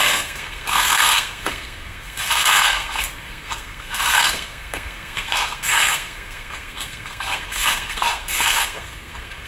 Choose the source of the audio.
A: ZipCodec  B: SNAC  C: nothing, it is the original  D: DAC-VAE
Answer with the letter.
B